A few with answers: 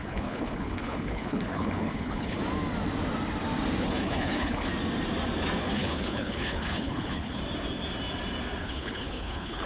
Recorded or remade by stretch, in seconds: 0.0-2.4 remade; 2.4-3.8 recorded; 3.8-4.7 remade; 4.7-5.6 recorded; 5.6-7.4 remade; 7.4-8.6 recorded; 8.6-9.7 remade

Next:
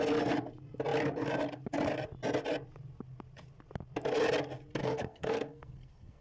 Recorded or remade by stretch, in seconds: 0.0-4.8 recorded; 4.8-6.2 remade

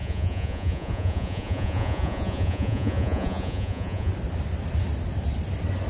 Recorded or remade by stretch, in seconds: 0.0-4.1 remade; 4.1-5.9 recorded